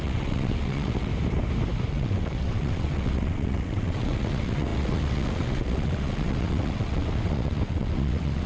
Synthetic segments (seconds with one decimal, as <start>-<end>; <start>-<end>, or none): 0.0-1.1; 1.9-8.5